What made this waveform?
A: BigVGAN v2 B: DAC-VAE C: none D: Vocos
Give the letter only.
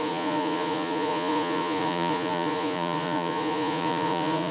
D